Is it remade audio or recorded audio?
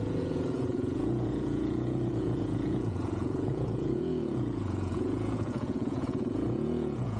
remade